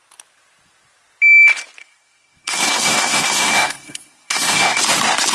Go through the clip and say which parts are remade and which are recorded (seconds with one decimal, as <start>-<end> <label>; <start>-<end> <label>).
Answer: 0.0-1.8 recorded; 1.8-4.8 remade; 4.8-5.3 recorded